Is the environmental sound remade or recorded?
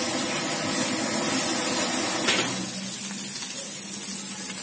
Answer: recorded